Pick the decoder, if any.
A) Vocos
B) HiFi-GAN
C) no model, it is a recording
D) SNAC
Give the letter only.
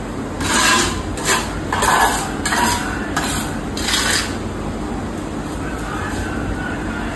C